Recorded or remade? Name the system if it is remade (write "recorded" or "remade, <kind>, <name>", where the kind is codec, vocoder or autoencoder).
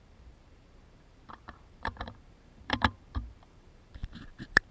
remade, vocoder, BigVGAN v2